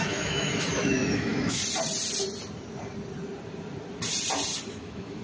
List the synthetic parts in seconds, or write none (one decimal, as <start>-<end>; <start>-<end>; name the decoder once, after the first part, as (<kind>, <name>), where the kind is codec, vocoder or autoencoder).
0.0-1.6 (autoencoder, DAC-VAE); 4.7-5.2